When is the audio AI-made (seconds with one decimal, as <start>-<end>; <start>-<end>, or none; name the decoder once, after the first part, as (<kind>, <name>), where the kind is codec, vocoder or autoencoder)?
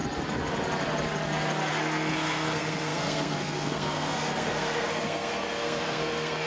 1.7-6.5 (codec, SNAC)